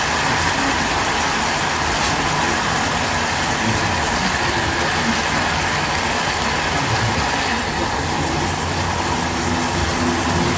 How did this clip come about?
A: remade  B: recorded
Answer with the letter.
B